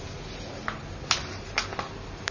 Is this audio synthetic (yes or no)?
no